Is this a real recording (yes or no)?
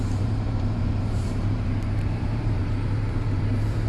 no